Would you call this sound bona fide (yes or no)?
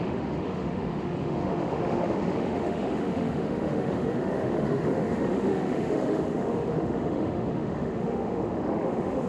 no